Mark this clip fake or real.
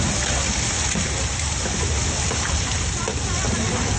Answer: real